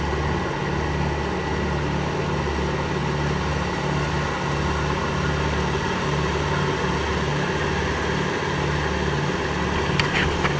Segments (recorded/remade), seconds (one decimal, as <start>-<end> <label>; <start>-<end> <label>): 0.0-10.6 recorded